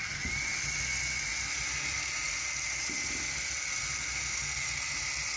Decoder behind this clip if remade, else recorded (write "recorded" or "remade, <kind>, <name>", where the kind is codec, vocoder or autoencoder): recorded